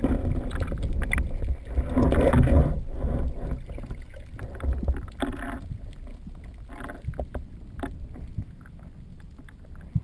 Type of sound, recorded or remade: recorded